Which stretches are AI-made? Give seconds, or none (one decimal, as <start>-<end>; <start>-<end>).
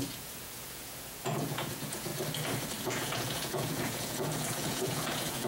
0.0-2.1; 2.8-5.5